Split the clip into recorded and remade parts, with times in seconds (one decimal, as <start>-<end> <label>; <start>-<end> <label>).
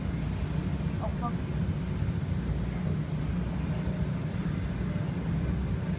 0.0-6.0 recorded